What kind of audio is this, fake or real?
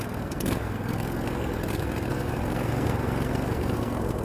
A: fake